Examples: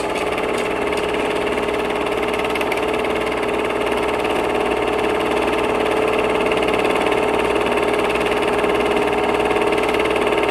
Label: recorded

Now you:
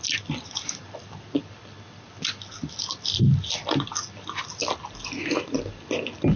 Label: recorded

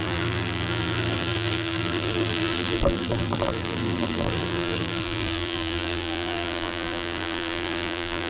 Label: remade